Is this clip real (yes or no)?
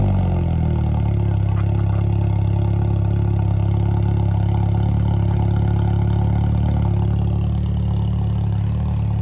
yes